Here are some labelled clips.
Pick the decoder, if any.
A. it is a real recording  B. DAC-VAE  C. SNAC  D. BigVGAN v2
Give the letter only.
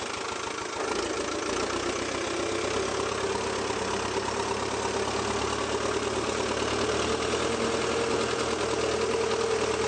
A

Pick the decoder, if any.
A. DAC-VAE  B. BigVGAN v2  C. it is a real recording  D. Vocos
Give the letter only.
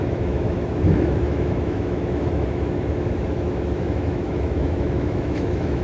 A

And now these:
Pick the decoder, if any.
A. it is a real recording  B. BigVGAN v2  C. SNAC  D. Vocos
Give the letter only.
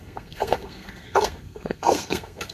C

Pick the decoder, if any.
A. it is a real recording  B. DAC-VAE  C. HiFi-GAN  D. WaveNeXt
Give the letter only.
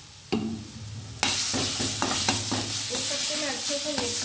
A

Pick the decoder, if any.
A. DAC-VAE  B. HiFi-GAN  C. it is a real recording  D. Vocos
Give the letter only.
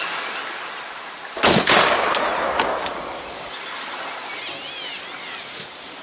C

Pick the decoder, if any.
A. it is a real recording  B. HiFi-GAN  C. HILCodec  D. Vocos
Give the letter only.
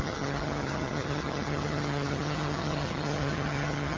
B